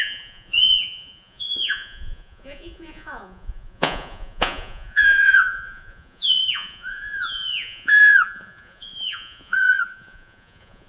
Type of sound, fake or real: fake